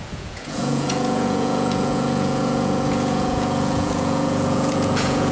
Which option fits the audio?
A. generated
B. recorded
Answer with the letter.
A